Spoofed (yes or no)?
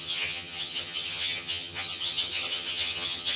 yes